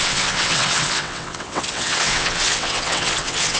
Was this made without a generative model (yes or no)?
no